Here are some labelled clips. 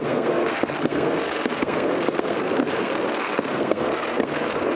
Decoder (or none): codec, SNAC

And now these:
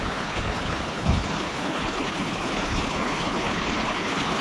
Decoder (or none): codec, HILCodec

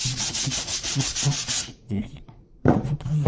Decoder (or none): vocoder, Vocos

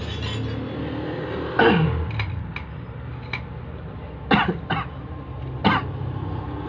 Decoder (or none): none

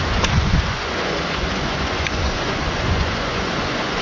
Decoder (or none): vocoder, Vocos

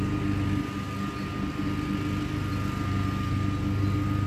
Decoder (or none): none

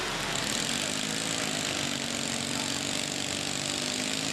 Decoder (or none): none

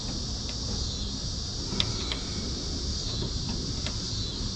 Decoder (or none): none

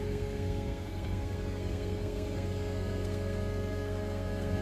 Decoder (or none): codec, SNAC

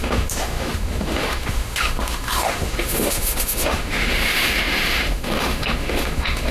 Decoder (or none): autoencoder, DAC-VAE